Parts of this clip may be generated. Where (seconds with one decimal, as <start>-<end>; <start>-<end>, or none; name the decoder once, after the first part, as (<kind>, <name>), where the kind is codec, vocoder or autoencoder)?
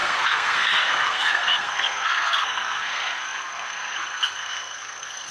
0.0-5.3 (codec, SNAC)